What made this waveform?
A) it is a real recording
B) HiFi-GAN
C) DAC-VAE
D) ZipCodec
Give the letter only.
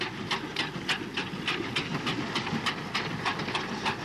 A